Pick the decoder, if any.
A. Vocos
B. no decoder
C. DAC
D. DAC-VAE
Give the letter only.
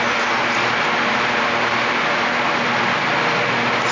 B